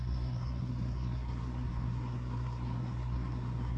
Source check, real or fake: fake